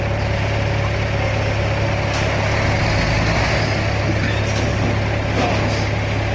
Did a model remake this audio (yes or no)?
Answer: no